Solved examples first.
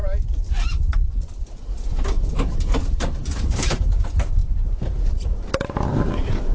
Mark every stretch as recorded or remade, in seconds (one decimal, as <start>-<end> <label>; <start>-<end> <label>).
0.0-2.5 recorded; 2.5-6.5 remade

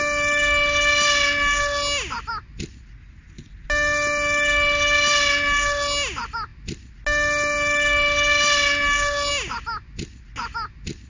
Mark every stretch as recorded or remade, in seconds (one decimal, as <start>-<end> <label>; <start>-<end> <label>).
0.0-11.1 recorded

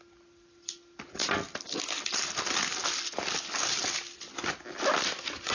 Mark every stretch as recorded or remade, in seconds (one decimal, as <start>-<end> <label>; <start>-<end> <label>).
0.0-3.6 recorded; 3.6-4.9 remade; 4.9-5.5 recorded